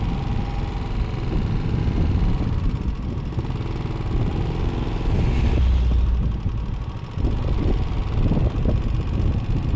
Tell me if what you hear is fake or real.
real